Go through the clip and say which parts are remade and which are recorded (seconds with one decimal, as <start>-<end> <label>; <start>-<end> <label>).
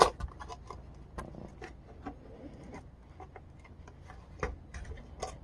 0.0-5.4 recorded